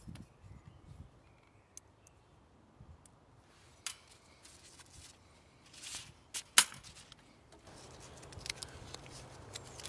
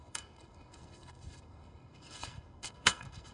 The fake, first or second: second